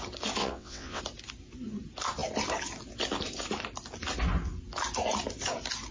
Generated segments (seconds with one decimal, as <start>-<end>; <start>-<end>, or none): 0.4-1.0